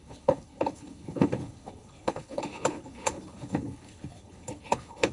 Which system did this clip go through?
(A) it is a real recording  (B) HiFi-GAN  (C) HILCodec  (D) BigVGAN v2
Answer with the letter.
C